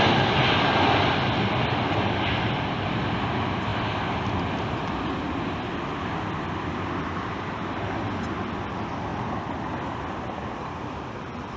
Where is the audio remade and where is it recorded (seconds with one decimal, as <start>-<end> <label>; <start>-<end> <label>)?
0.0-11.6 recorded